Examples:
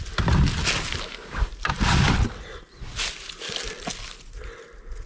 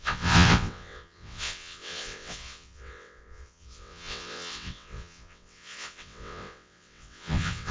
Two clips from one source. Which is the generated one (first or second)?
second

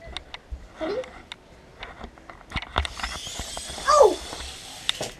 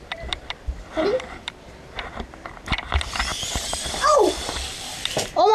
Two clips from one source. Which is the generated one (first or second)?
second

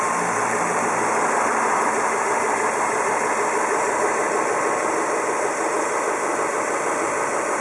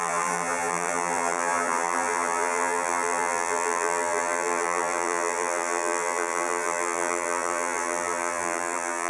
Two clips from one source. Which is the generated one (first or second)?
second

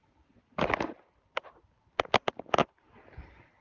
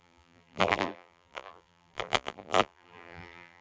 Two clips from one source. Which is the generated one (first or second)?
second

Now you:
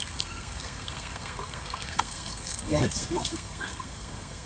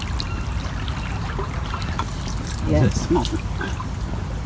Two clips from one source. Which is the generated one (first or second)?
first